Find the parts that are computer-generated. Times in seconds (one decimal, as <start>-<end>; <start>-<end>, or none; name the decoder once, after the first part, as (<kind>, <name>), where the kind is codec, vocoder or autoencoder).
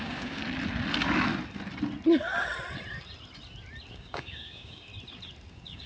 0.0-0.4 (codec, DAC); 3.9-4.9; 5.5-5.9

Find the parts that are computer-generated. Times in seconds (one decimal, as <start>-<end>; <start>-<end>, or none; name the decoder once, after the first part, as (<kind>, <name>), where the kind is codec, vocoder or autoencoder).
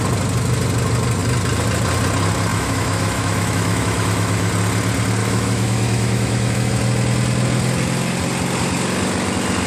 2.5-4.5 (autoencoder, DAC-VAE); 5.2-6.7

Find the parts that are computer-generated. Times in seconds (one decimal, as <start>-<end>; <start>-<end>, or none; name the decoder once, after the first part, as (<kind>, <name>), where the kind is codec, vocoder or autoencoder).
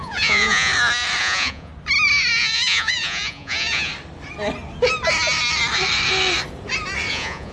0.0-0.7 (vocoder, Vocos); 1.2-1.7; 2.4-3.9; 7.1-7.5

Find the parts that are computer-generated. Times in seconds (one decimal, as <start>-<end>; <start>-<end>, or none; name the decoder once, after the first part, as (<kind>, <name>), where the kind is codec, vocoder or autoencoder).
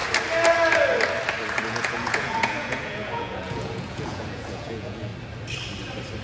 1.6-5.1 (vocoder, Vocos)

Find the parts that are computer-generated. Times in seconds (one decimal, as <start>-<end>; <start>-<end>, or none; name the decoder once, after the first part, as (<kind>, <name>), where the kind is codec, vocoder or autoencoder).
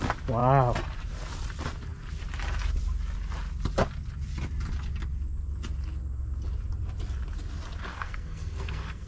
7.9-9.1 (codec, SNAC)